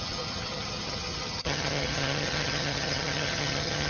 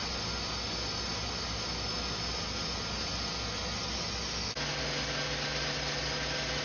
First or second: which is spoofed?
first